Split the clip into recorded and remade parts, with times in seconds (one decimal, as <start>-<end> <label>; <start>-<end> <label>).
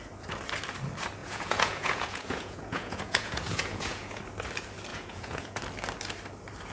0.0-1.2 recorded; 1.2-4.2 remade; 4.2-4.9 recorded; 4.9-5.6 remade; 5.6-6.7 recorded